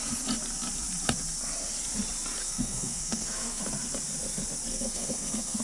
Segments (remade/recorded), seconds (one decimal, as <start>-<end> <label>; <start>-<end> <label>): 0.0-2.4 recorded; 2.4-3.6 remade; 3.6-4.7 recorded; 4.7-5.6 remade